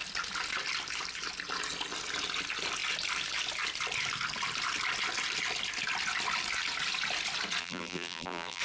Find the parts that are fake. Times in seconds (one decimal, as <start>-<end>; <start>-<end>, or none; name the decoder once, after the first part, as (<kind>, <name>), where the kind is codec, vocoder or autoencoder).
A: 7.6-8.6 (vocoder, BigVGAN v2)